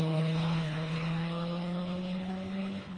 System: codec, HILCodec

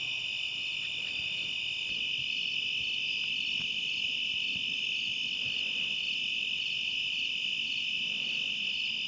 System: none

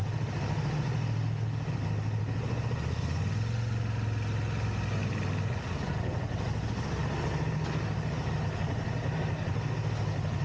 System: none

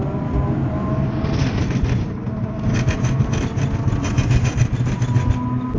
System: none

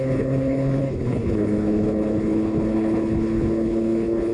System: codec, HILCodec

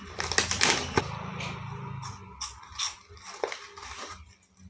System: none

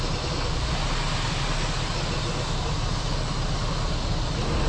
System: none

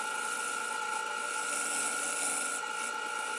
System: none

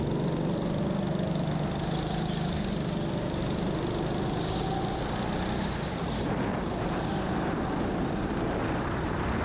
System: none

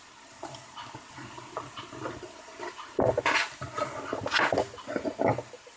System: none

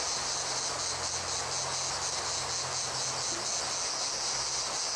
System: none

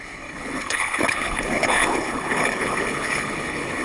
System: codec, HILCodec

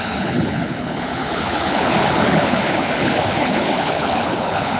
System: codec, HILCodec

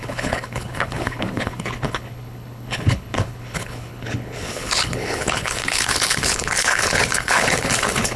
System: codec, HILCodec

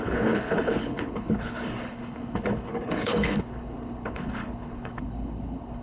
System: codec, HILCodec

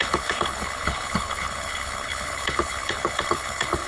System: codec, HILCodec